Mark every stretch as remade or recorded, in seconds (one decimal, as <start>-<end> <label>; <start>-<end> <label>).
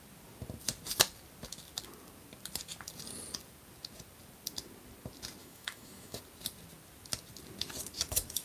0.0-5.4 recorded; 5.4-6.2 remade; 6.2-8.4 recorded